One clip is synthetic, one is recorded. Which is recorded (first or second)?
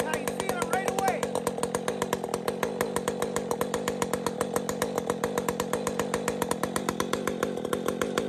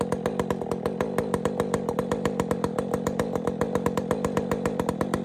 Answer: first